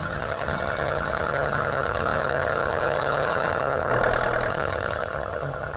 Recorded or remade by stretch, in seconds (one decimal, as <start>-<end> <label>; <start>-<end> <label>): 0.0-3.9 remade; 3.9-4.5 recorded; 4.5-5.8 remade